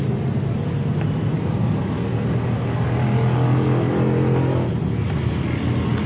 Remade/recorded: recorded